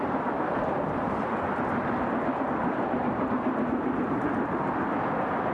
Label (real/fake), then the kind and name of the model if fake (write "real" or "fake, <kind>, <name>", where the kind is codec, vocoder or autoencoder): real